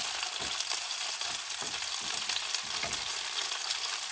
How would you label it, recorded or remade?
recorded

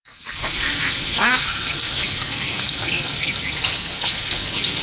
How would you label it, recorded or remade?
remade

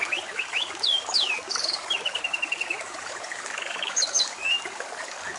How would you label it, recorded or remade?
remade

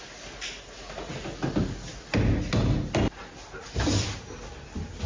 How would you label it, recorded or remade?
recorded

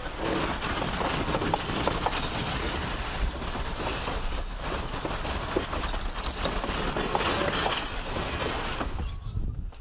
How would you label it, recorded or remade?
recorded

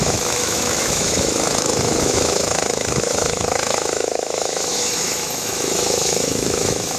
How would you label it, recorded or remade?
remade